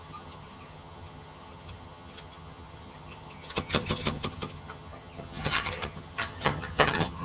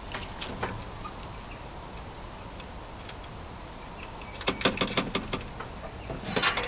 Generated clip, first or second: first